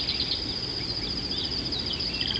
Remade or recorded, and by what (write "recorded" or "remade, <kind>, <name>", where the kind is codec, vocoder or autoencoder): recorded